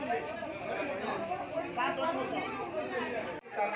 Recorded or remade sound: recorded